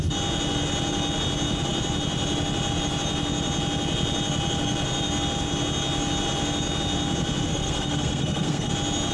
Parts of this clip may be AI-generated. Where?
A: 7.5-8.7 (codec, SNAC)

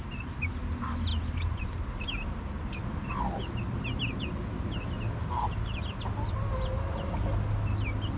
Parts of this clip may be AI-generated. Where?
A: none

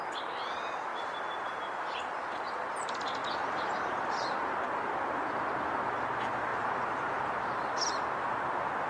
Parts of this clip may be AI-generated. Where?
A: 0.9-2.3 (vocoder, BigVGAN v2); 3.2-4.2; 6.5-7.8